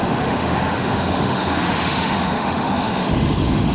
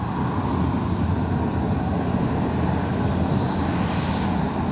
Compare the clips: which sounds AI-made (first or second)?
first